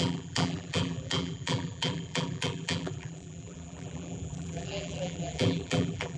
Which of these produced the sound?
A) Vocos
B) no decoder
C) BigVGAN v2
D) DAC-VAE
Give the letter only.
C